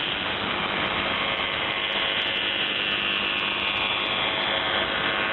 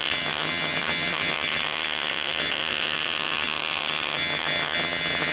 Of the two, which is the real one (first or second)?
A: first